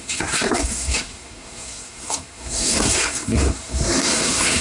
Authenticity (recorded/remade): remade